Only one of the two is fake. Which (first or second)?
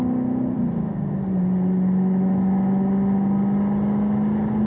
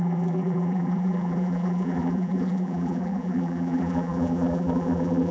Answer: second